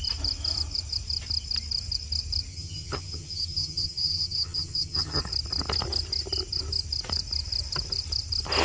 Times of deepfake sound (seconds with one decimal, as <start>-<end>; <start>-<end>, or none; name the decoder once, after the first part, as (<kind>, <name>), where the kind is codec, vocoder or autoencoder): 2.5-5.2 (vocoder, HiFi-GAN)